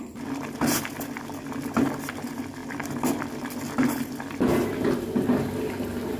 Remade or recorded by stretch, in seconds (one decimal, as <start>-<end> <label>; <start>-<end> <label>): 0.0-6.2 recorded